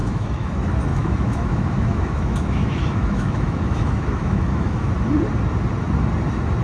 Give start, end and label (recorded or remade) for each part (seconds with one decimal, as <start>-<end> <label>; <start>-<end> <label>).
0.0-0.5 remade; 0.5-0.9 recorded; 0.9-4.9 remade; 4.9-6.6 recorded